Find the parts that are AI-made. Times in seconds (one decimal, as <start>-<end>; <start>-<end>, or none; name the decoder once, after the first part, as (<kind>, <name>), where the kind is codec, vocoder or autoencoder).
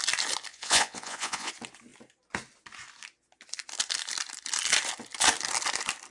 0.5-1.5 (vocoder, Vocos)